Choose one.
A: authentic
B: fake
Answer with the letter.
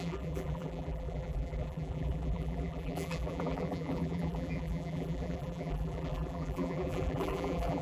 B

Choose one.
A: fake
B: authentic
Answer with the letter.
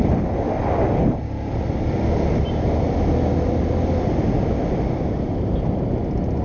B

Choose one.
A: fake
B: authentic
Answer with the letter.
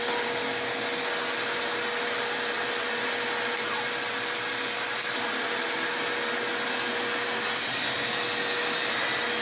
B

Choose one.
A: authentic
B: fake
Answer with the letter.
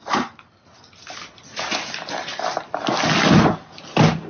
A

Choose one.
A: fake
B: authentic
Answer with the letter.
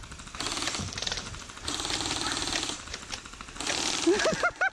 B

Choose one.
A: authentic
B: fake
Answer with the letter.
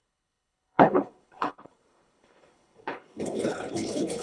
B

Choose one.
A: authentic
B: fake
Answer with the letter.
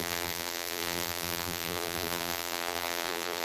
B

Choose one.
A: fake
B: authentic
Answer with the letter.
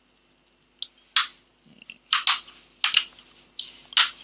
B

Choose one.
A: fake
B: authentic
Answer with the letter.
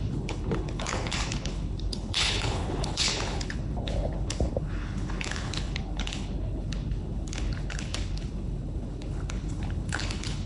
A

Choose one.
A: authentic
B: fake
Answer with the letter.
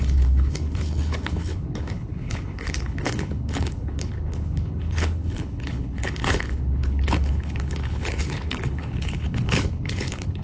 B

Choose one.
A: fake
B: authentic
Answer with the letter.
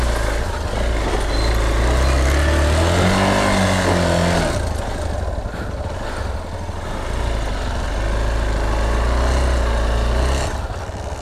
B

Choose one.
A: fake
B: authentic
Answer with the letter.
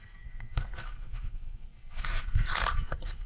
A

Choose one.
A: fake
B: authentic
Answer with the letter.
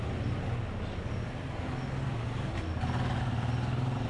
B